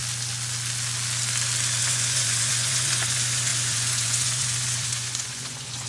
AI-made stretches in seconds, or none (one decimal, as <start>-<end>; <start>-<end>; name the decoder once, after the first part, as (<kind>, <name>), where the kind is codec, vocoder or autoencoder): 1.8-5.9 (vocoder, Vocos)